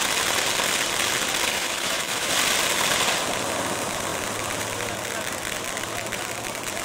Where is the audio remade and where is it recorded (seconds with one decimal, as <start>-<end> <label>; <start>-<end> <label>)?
0.0-1.5 recorded; 1.5-2.3 remade; 2.3-6.8 recorded